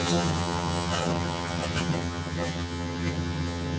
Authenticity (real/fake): fake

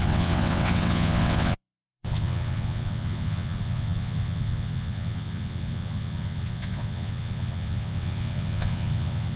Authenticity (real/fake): fake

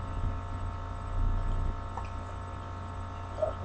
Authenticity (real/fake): real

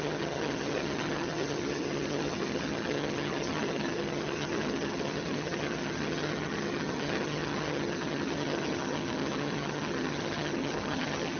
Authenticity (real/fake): fake